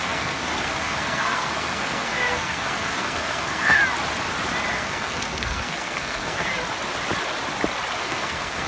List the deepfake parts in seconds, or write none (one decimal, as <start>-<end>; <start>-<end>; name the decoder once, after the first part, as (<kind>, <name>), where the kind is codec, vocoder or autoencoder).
0.0-3.8 (codec, SNAC); 4.7-6.5; 8.0-8.7